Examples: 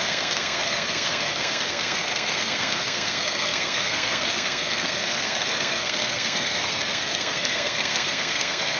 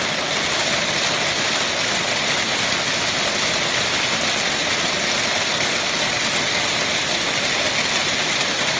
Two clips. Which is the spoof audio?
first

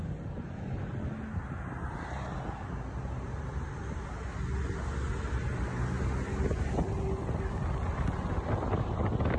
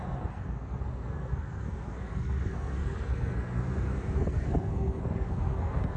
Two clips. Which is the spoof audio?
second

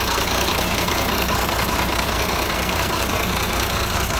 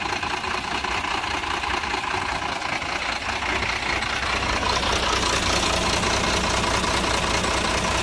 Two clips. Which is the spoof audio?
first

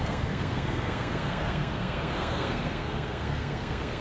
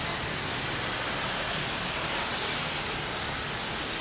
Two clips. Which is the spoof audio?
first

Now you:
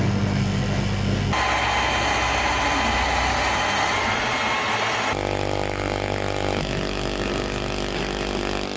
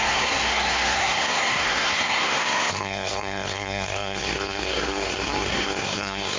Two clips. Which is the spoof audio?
second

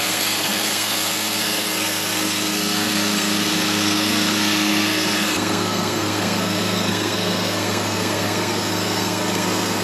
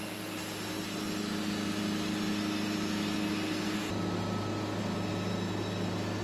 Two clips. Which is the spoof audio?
first